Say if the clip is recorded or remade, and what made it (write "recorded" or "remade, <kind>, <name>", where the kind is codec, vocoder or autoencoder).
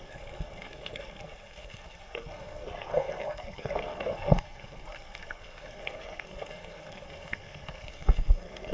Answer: remade, codec, SNAC